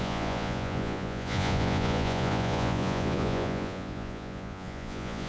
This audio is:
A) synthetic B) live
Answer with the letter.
A